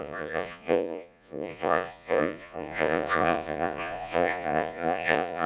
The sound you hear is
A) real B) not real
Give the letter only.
B